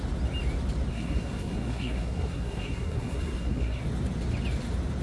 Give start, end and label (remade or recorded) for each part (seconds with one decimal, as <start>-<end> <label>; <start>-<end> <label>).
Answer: 0.0-0.9 recorded; 0.9-3.8 remade; 3.8-5.0 recorded